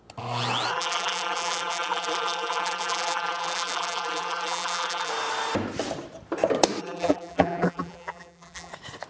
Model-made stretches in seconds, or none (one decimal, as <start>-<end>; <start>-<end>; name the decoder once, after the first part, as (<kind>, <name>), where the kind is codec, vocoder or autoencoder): 0.7-5.1 (vocoder, BigVGAN v2); 6.8-8.7